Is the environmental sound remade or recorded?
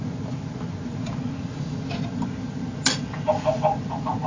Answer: recorded